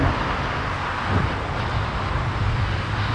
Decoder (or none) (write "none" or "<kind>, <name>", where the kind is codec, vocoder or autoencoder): none